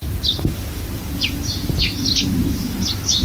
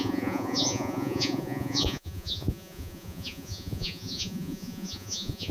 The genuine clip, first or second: first